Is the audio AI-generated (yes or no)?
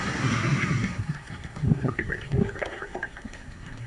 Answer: yes